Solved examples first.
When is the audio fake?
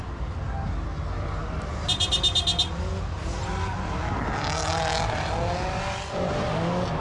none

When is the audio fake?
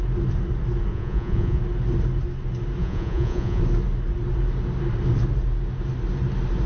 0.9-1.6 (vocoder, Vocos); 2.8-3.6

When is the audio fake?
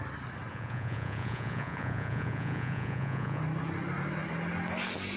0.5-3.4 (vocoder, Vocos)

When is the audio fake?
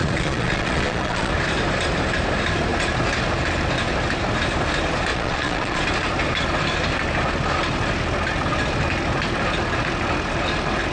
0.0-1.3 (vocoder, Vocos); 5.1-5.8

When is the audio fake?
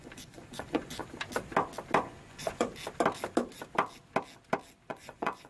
0.0-1.0 (vocoder, Vocos); 2.0-2.7; 4.9-5.5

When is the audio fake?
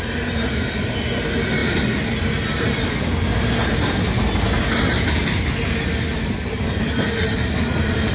none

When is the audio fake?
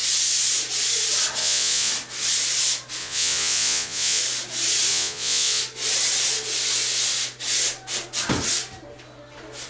1.4-1.9 (vocoder, Vocos); 3.0-4.2; 4.9-5.6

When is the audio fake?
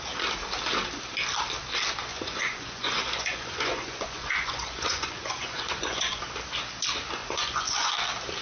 2.1-6.2 (vocoder, Vocos); 7.2-7.9